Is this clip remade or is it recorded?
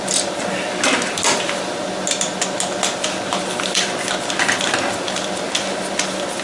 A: recorded